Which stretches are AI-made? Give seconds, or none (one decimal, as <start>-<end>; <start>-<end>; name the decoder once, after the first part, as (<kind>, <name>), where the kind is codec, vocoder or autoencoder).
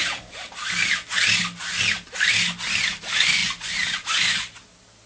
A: none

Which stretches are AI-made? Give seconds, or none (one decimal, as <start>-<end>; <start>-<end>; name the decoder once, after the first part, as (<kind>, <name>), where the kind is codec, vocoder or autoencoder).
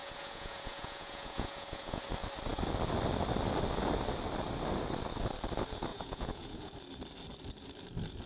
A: 0.0-2.0 (vocoder, Vocos); 5.9-6.7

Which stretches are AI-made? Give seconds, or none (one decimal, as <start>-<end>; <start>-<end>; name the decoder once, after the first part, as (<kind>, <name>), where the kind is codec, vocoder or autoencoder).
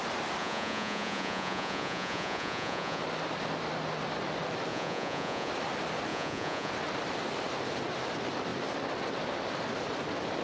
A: 0.4-3.0 (vocoder, Vocos); 4.7-5.5; 6.1-6.7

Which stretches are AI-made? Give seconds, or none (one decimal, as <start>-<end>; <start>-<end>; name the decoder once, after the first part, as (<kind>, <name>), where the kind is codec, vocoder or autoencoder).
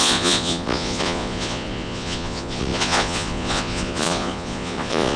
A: 0.0-5.2 (vocoder, Vocos)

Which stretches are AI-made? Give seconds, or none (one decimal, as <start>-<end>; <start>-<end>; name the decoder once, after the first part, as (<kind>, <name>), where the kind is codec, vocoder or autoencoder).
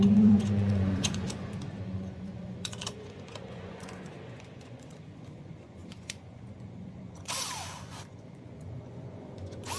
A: 0.0-9.8 (vocoder, Vocos)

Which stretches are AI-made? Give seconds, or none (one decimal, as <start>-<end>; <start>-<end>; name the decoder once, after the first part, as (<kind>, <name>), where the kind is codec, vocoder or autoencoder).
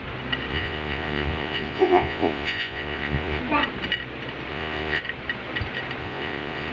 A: 0.5-3.4 (vocoder, Vocos); 4.5-5.0; 6.0-6.7